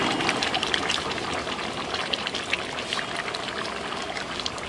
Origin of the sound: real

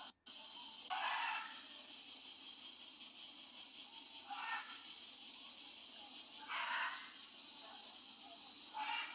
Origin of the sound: real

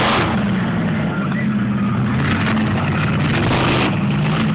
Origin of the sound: real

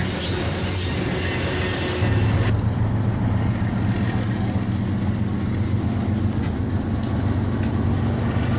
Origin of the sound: real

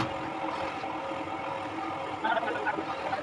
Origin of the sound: real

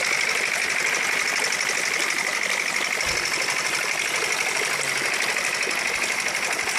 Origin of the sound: real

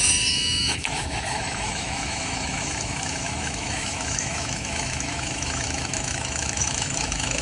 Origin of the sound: fake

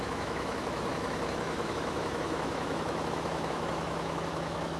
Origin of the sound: fake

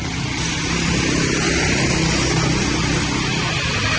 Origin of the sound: real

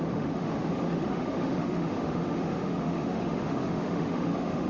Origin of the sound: fake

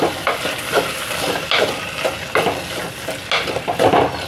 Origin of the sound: real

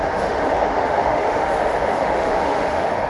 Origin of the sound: fake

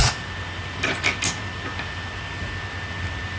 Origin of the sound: real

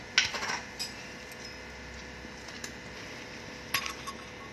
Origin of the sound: real